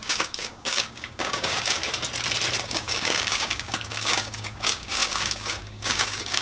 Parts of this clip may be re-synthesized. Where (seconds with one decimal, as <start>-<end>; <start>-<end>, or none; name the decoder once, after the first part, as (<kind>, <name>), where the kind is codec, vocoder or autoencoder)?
0.0-1.8 (codec, DAC); 2.6-6.4